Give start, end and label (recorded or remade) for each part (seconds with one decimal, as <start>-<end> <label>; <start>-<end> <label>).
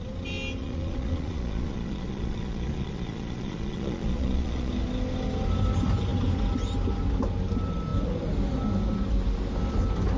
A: 0.0-0.6 recorded; 0.6-4.7 remade; 4.7-10.2 recorded